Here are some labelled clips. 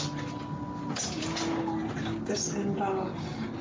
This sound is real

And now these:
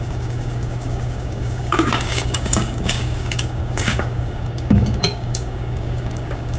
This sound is fake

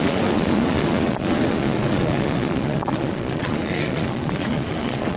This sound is fake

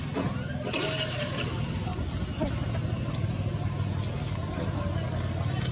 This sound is real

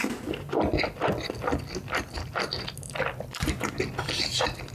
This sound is real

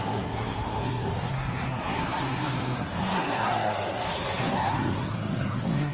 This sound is fake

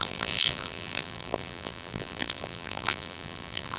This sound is fake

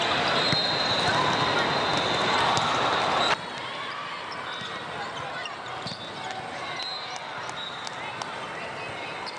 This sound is real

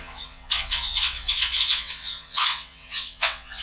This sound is fake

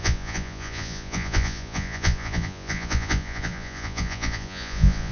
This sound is fake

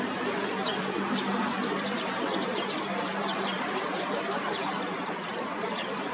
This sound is fake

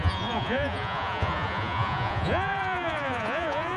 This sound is fake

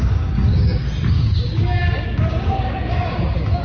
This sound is fake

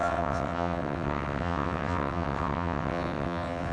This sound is fake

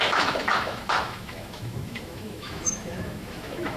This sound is fake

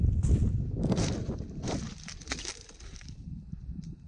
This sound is fake